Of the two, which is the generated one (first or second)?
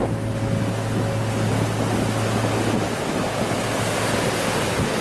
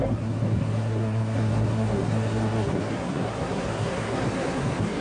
second